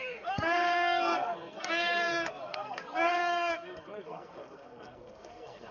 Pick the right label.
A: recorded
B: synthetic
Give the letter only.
B